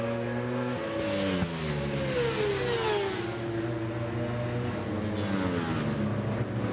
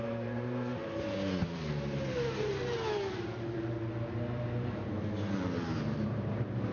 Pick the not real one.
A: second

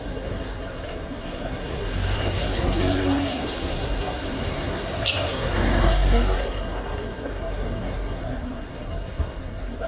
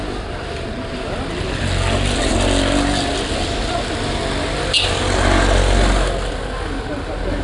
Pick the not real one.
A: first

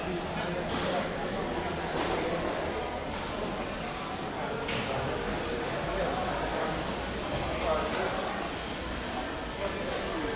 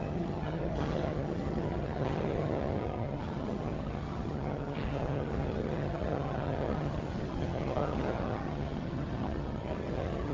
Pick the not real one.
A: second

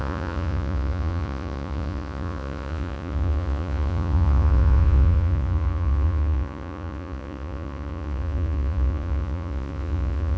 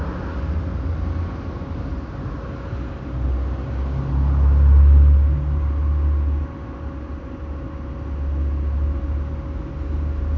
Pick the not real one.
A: first